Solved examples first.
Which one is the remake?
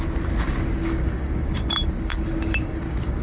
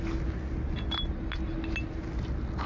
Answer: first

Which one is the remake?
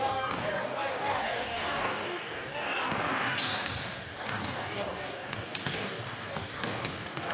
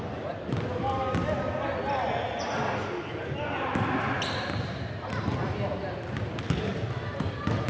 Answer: first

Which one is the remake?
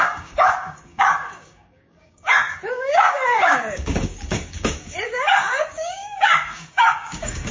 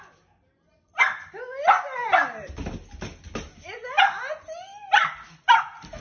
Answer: first